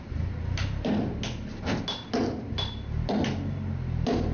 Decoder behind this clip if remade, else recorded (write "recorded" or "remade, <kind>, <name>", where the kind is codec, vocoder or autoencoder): recorded